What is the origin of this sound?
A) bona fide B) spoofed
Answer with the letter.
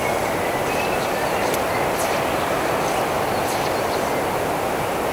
A